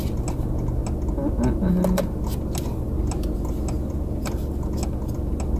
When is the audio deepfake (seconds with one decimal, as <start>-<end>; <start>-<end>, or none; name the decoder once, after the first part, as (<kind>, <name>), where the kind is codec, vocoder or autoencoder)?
none